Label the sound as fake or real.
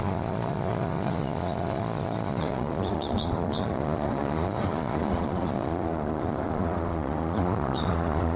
fake